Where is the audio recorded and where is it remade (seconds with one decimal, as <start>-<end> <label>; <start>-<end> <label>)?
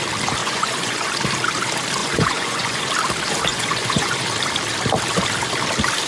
0.0-0.4 recorded; 0.4-1.1 remade; 1.1-2.0 recorded; 2.0-2.9 remade; 2.9-3.5 recorded; 3.5-4.2 remade; 4.2-6.1 recorded